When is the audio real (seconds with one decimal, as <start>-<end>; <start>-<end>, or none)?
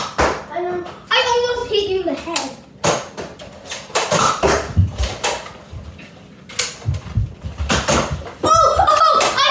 0.0-9.5